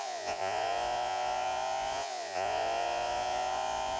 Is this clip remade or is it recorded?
remade